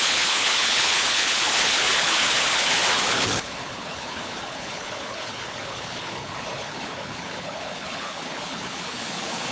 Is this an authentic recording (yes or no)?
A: no